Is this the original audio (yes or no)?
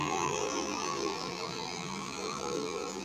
no